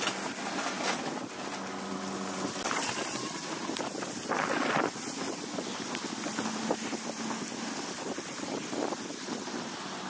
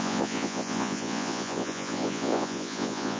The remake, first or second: second